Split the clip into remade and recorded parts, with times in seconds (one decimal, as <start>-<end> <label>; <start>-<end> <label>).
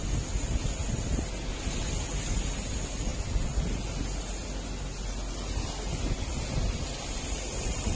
0.0-8.0 recorded